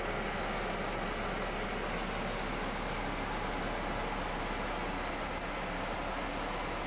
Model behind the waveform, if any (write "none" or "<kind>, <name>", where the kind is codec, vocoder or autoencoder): none